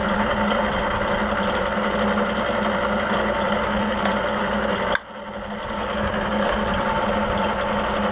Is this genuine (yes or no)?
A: yes